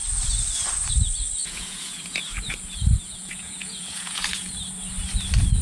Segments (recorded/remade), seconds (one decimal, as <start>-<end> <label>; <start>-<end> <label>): 0.0-1.4 recorded; 1.4-4.6 remade; 4.6-5.6 recorded